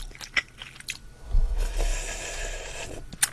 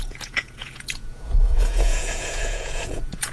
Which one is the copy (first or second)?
second